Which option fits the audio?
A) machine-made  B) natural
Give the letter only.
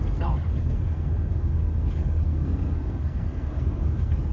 A